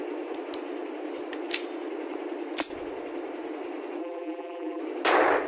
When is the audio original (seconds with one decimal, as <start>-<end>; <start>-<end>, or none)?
0.0-4.0; 4.8-5.5